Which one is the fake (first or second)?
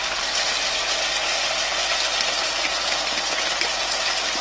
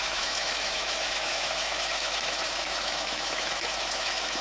second